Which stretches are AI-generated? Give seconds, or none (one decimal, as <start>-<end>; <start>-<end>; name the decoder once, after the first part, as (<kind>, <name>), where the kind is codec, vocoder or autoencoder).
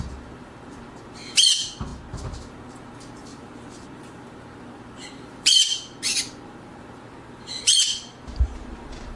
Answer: 0.0-1.9 (vocoder, BigVGAN v2); 2.5-9.2